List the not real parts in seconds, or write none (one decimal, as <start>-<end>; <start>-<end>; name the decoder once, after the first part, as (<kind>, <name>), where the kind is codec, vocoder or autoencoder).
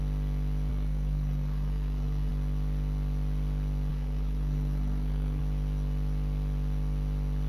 0.7-2.3 (codec, SNAC); 3.9-5.4